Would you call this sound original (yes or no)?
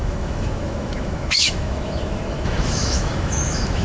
no